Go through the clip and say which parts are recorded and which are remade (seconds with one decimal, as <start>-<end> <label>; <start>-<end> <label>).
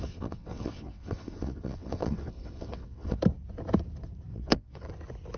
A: 0.0-3.2 remade; 3.2-4.3 recorded; 4.3-4.9 remade; 4.9-5.4 recorded